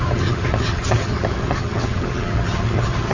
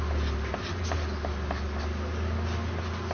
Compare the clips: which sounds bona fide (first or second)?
second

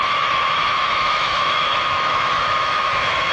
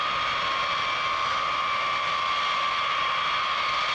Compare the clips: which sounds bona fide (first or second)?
second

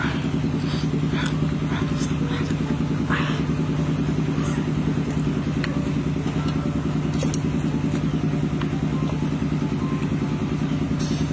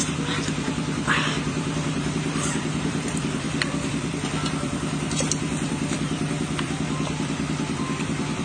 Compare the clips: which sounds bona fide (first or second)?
first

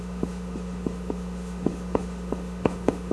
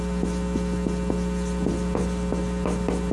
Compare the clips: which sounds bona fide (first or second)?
second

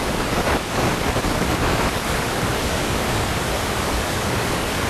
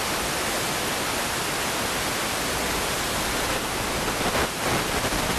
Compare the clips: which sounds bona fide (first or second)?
second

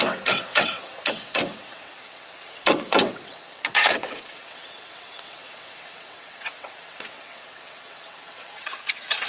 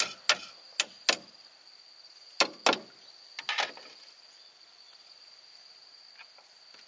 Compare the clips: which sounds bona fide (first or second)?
second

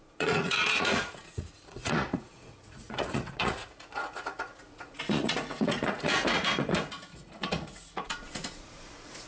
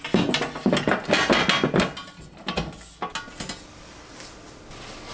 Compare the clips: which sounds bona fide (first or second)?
second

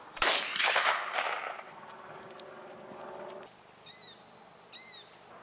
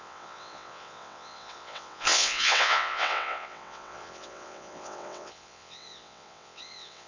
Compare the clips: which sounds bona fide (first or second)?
first